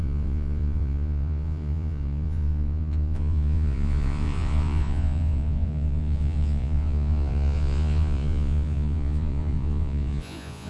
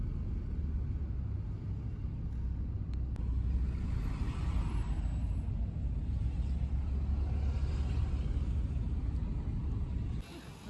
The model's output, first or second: first